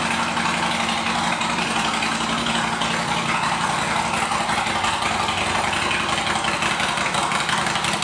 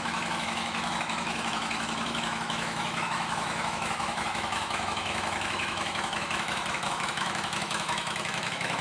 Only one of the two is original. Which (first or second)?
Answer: first